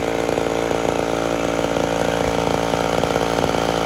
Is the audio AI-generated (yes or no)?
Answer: no